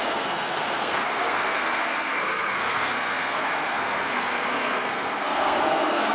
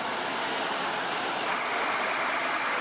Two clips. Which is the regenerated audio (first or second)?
first